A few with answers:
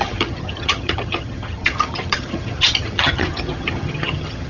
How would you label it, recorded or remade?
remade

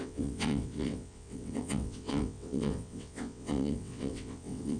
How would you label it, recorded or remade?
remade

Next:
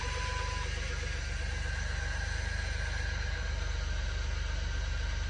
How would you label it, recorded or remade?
recorded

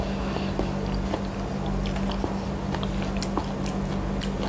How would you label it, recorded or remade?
recorded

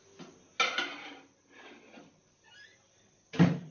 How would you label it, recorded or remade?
recorded